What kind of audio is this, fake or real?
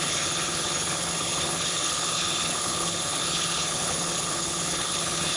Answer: fake